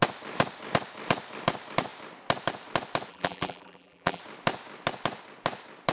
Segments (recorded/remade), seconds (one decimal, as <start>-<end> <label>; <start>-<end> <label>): 0.0-3.1 recorded; 3.1-4.2 remade; 4.2-5.9 recorded